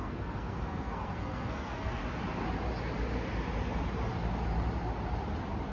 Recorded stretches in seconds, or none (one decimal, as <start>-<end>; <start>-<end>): 2.0-5.7